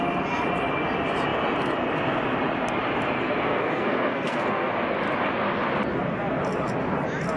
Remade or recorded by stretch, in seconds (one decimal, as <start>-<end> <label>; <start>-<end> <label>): 0.0-3.5 recorded; 3.5-4.7 remade; 4.7-7.4 recorded